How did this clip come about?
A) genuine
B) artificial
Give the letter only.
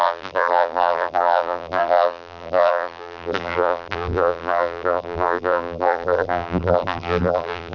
B